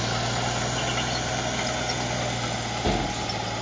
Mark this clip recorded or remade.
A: recorded